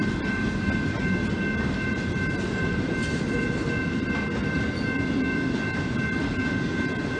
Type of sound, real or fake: real